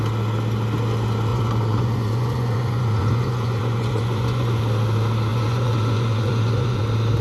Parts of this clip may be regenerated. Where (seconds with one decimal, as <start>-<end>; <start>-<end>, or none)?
1.3-4.6; 5.3-6.8